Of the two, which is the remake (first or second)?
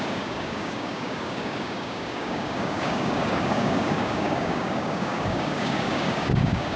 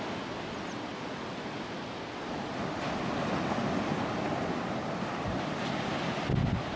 first